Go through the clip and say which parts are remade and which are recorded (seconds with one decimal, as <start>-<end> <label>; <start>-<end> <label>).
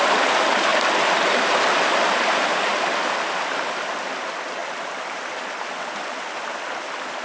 0.0-7.2 recorded